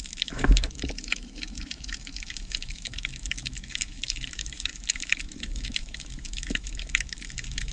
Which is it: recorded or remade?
remade